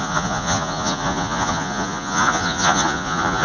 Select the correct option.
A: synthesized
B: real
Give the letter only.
A